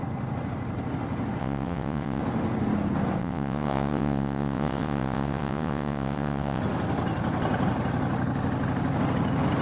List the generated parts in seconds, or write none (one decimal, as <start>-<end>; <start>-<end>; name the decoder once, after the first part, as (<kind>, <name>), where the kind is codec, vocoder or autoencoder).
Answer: 1.4-2.2 (vocoder, WaveNeXt); 3.2-6.6